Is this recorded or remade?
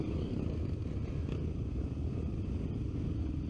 recorded